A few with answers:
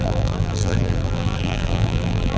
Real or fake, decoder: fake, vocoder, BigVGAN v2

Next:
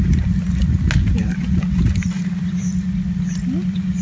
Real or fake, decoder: real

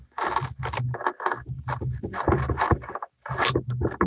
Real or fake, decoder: real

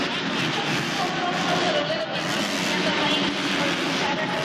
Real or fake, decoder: real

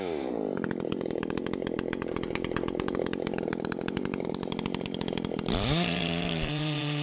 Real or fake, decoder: fake, vocoder, BigVGAN v2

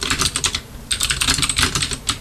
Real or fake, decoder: fake, vocoder, BigVGAN v2